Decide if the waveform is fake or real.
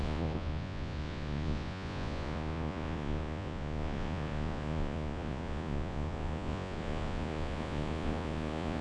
fake